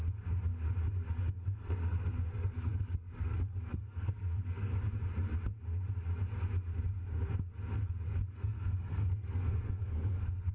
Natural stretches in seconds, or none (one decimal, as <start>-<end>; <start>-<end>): 0.0-1.2; 4.7-8.3